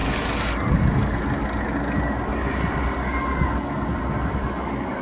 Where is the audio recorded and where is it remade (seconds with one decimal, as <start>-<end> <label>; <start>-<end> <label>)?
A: 0.0-5.0 recorded